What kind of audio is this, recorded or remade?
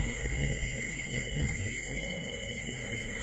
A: remade